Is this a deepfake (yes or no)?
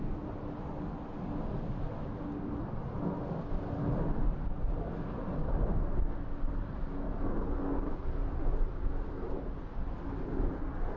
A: no